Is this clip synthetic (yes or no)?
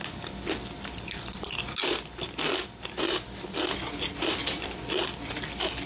no